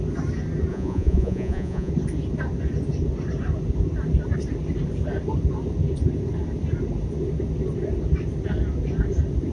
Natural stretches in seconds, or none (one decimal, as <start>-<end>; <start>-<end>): 0.0-0.7; 1.9-9.5